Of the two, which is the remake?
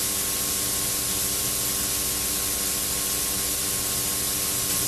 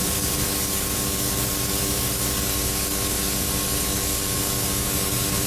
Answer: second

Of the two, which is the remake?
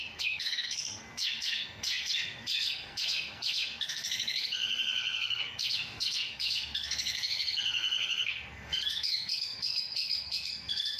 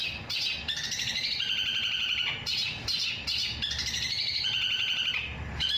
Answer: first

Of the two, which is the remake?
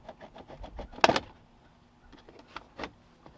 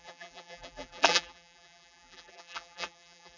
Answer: second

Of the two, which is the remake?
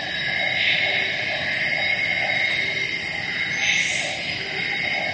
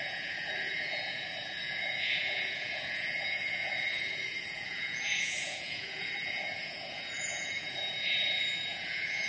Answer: second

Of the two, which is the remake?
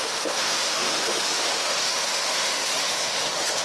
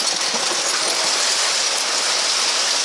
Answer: first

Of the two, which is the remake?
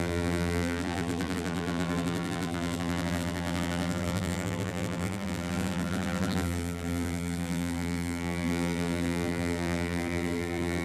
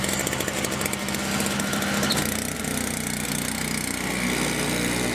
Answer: first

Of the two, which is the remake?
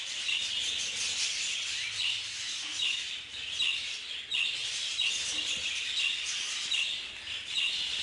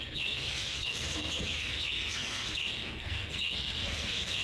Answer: second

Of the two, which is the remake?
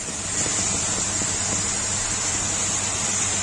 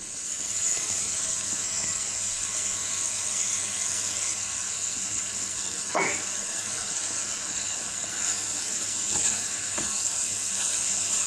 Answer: second